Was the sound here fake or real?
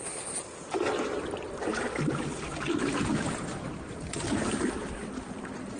real